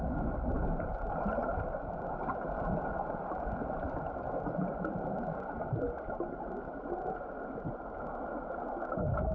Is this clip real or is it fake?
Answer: real